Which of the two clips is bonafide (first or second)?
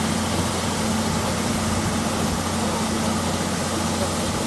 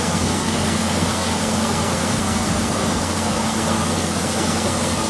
first